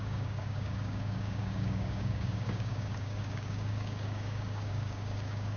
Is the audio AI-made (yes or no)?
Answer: yes